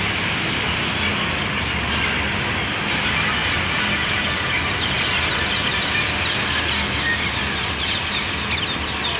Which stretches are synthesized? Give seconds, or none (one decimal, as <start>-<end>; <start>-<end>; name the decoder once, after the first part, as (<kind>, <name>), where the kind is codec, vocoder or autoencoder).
none